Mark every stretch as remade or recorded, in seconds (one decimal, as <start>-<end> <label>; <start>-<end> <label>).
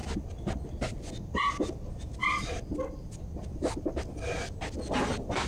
0.0-5.5 recorded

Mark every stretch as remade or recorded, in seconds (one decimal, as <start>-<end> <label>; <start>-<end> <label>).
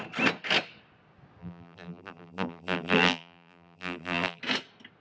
0.0-1.4 recorded; 1.4-4.4 remade; 4.4-5.0 recorded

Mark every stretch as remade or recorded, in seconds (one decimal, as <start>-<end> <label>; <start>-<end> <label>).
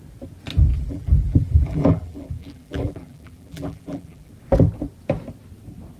0.0-0.7 recorded; 0.7-4.3 remade; 4.3-6.0 recorded